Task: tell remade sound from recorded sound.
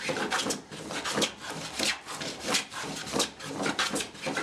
recorded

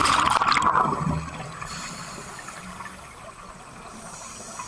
recorded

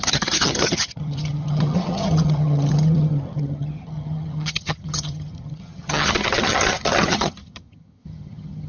remade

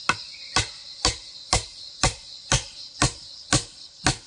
recorded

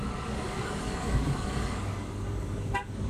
remade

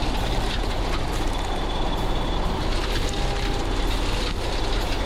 recorded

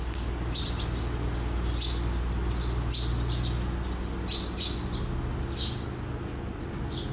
recorded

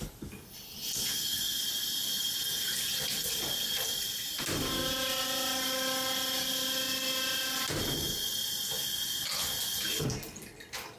recorded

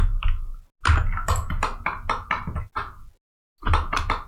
recorded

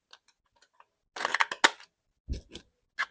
recorded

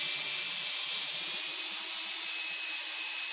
recorded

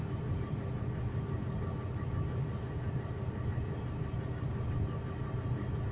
recorded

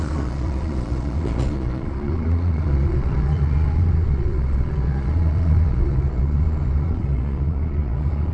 remade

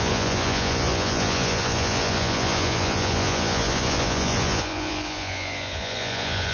remade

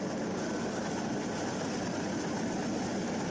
recorded